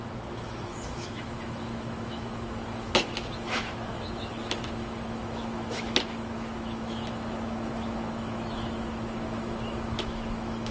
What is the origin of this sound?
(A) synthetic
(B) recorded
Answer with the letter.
A